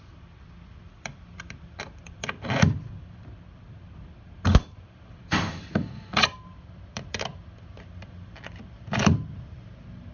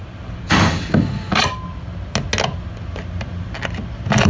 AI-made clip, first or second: first